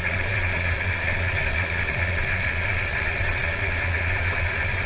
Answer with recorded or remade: remade